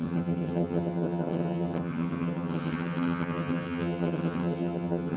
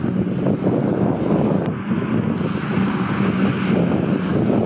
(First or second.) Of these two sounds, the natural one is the second